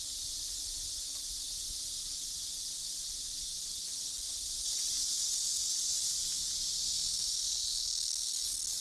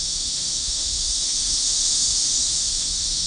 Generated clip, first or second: second